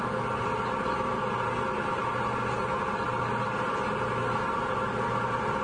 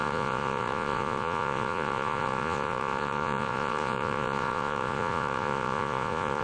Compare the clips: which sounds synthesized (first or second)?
second